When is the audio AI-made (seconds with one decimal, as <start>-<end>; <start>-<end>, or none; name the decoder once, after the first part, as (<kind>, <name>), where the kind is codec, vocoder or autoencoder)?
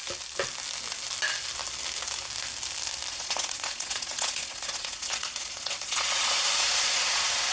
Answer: 3.1-7.5 (vocoder, Vocos)